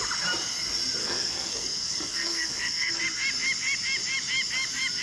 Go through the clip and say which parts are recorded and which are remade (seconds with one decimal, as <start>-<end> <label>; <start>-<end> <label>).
0.0-1.0 recorded; 1.0-3.0 remade; 3.0-5.0 recorded